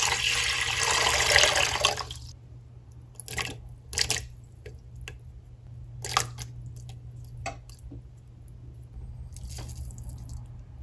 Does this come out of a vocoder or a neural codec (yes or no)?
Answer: no